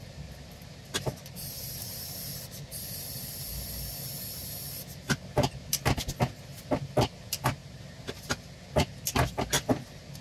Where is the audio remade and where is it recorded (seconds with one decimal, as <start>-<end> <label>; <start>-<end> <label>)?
0.0-10.2 recorded